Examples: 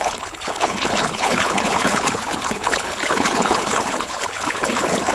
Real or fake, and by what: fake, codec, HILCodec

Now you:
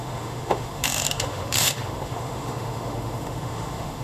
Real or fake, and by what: fake, autoencoder, DAC-VAE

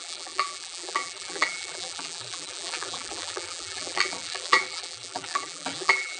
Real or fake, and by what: fake, vocoder, BigVGAN v2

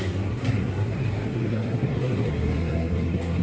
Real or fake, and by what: fake, codec, SNAC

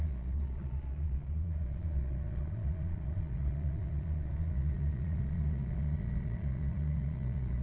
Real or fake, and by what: fake, vocoder, Vocos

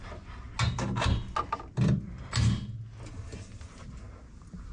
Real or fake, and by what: real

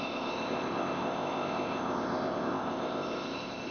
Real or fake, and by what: fake, codec, ZipCodec